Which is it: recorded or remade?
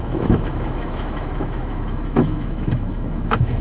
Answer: remade